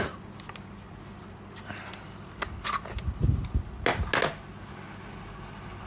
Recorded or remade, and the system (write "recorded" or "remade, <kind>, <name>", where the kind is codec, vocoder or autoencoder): recorded